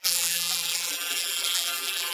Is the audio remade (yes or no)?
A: yes